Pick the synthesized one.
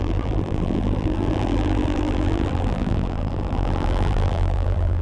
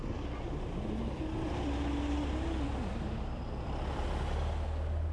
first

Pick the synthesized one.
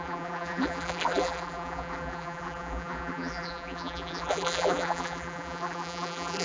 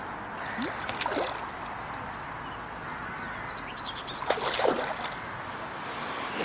first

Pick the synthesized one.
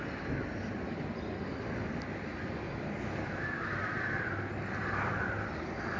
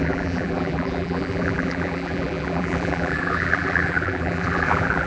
second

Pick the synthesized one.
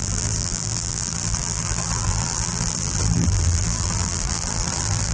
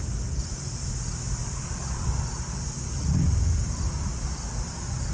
first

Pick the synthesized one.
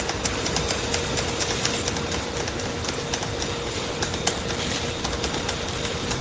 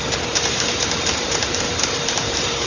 second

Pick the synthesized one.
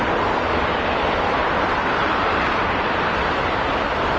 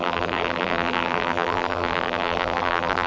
second